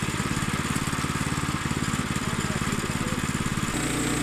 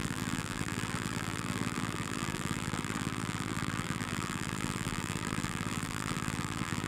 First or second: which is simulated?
second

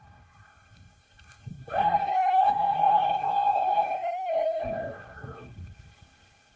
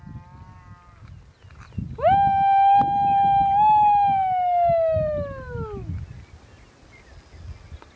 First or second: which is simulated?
first